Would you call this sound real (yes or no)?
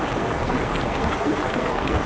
no